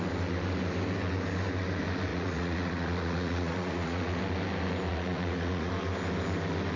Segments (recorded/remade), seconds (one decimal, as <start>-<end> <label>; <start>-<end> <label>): 0.0-2.1 recorded; 2.1-4.2 remade; 4.2-4.9 recorded; 4.9-5.7 remade; 5.7-6.8 recorded